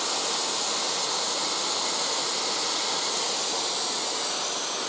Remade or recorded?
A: recorded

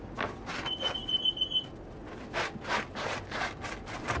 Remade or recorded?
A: recorded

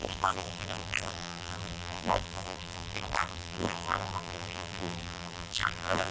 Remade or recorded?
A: remade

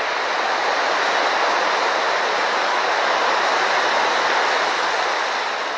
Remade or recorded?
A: recorded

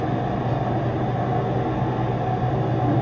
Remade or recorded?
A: recorded